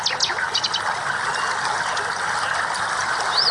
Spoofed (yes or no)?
no